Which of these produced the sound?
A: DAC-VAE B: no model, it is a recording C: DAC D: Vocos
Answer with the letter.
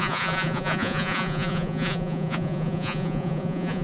D